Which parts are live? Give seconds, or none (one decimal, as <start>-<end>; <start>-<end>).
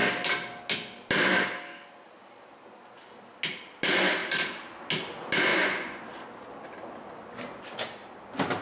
0.0-5.5; 6.0-8.6